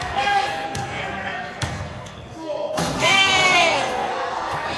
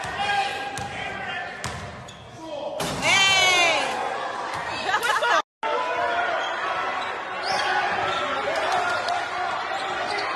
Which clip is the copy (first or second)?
first